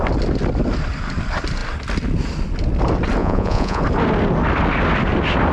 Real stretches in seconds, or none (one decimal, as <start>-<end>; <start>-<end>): 0.0-3.2; 3.8-5.5